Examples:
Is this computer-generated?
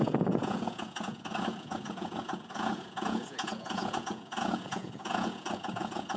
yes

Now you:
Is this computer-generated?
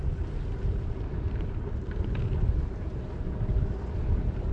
no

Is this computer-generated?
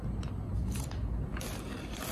no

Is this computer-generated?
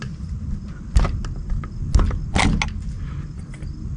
no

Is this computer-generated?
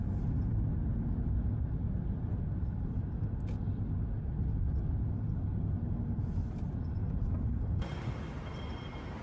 no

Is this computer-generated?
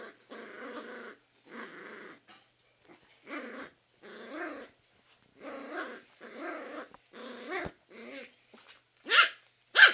no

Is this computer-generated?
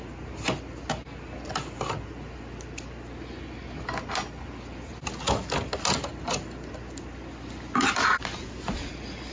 no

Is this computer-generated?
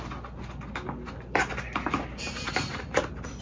no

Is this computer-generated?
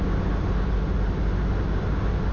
no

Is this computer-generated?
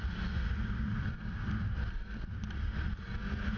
no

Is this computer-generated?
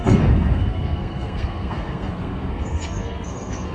yes